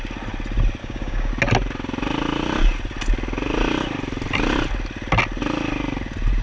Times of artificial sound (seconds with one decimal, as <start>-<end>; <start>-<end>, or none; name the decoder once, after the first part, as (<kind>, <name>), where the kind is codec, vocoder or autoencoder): 0.8-1.3 (codec, DAC)